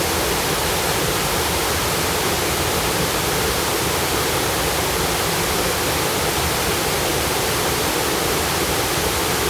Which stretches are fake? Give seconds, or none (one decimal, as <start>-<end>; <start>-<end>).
7.1-7.8